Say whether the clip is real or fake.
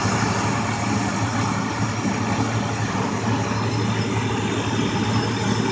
real